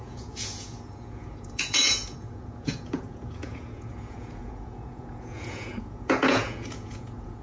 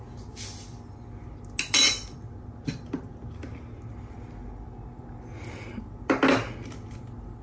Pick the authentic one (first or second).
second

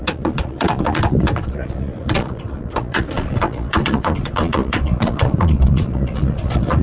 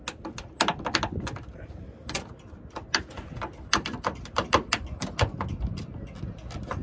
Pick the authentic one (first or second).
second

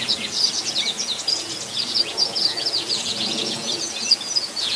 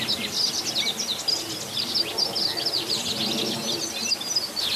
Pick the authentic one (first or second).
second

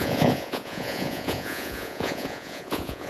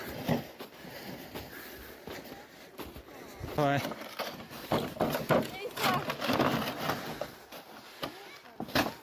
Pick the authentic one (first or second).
second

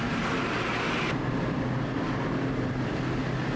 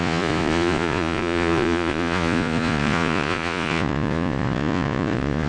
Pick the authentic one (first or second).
first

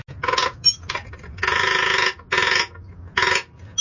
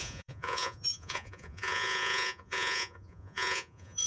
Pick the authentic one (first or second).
first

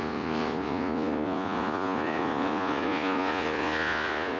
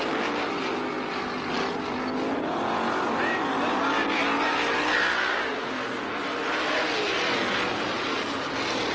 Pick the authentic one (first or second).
second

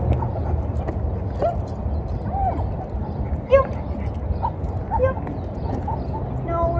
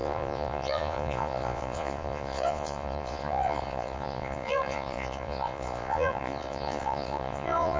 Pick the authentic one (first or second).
first